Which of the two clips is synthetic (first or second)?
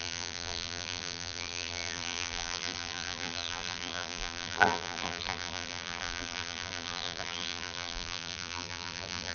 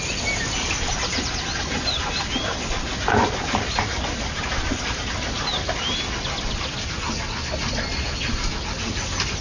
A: first